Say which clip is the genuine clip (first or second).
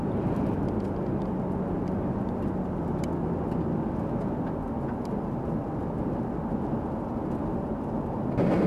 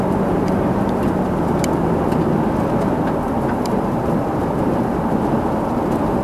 first